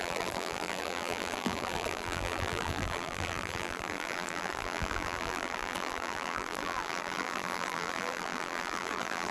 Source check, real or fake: fake